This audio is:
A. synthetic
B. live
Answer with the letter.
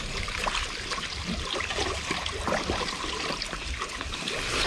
B